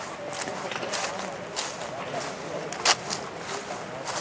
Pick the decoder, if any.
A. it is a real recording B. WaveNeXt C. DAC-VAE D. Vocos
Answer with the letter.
A